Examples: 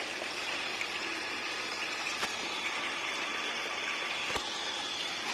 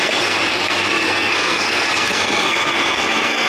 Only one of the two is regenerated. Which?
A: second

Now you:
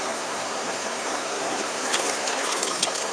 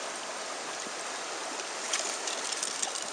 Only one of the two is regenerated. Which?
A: first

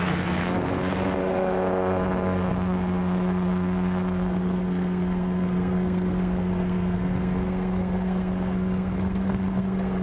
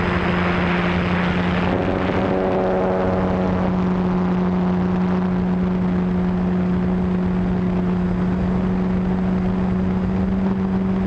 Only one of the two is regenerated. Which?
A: first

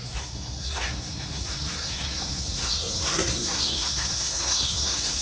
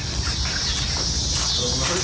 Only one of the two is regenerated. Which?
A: first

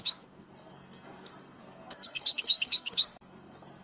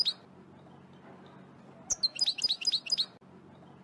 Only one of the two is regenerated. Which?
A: first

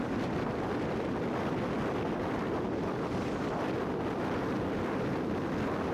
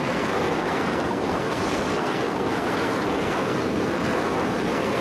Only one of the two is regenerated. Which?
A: second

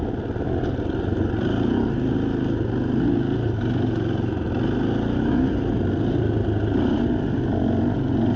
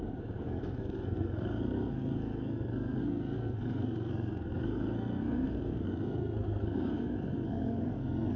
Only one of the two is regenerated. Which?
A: second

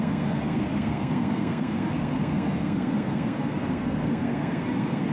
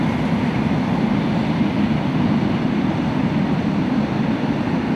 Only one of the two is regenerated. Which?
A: first